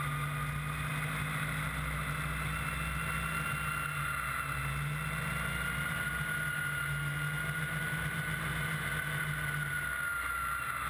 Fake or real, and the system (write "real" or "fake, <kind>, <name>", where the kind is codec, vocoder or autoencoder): real